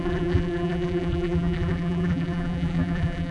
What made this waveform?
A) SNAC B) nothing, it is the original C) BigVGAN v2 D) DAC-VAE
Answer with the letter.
C